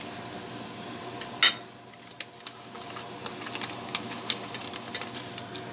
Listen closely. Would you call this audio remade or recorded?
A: recorded